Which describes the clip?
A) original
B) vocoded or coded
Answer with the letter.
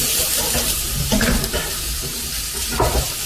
A